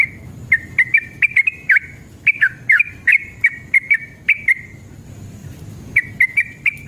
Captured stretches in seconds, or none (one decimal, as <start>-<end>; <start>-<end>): 0.0-5.4; 6.1-6.9